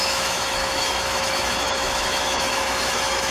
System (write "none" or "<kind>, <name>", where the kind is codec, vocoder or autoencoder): autoencoder, DAC-VAE